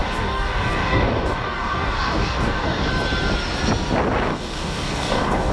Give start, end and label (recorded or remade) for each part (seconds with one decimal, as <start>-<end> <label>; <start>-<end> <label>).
0.0-2.9 remade; 2.9-4.3 recorded; 4.3-5.5 remade